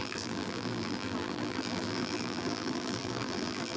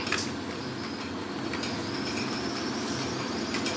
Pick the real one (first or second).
second